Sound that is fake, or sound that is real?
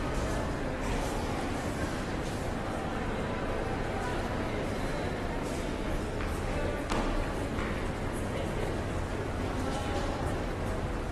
real